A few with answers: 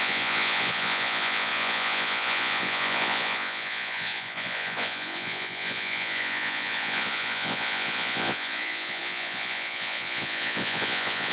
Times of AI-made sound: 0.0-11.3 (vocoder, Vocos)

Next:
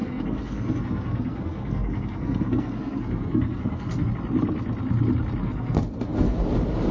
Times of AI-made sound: 0.0-4.1 (codec, SNAC); 5.4-6.4

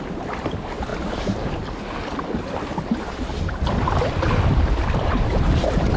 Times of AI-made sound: 0.0-0.9 (vocoder, BigVGAN v2); 3.4-6.0

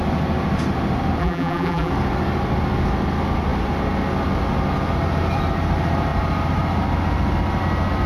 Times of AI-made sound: 1.2-1.9 (vocoder, BigVGAN v2)

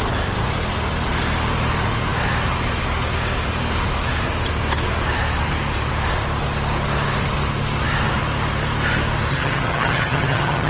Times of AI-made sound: 9.3-10.7 (vocoder, HiFi-GAN)